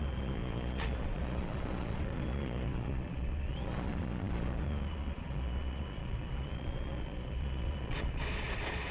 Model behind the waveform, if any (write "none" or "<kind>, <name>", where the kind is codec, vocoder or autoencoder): vocoder, Vocos